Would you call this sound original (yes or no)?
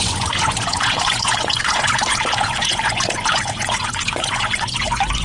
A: no